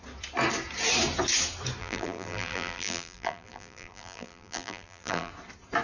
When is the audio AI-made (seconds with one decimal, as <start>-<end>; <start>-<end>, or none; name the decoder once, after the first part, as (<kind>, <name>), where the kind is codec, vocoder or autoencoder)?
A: 1.8-5.3 (vocoder, BigVGAN v2)